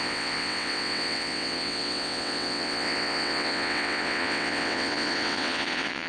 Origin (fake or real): fake